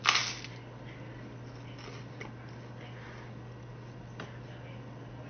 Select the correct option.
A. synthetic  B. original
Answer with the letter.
B